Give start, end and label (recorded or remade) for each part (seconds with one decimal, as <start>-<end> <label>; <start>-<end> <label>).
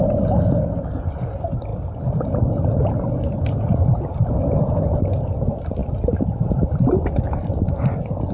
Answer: 0.0-8.3 recorded